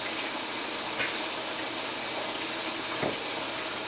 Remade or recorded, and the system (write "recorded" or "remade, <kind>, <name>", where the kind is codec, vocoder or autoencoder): recorded